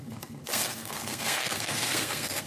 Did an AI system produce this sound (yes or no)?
yes